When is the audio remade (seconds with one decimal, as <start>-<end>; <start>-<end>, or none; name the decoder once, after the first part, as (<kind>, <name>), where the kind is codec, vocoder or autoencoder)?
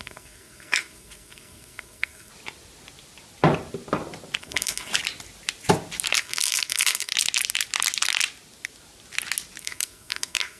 0.0-2.3 (codec, SNAC); 4.4-4.9; 6.2-7.1; 9.6-10.6